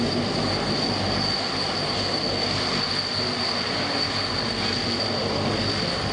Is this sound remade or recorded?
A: recorded